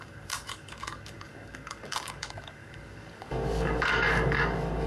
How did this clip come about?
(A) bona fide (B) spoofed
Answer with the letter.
B